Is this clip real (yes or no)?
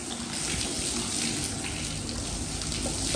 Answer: yes